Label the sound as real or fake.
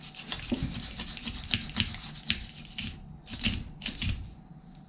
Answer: real